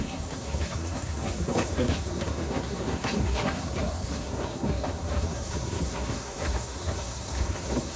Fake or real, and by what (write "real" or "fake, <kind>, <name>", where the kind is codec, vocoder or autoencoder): fake, codec, SNAC